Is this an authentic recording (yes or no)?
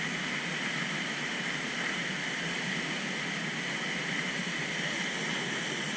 yes